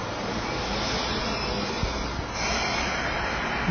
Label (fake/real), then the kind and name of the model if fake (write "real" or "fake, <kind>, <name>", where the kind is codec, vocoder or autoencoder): real